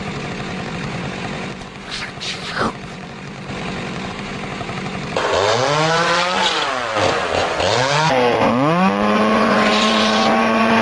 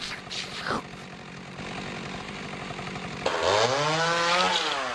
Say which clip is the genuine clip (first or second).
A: second